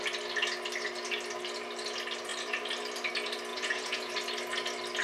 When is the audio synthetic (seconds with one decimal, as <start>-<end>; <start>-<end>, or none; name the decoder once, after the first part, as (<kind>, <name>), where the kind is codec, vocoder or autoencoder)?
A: 3.5-4.1 (vocoder, Vocos)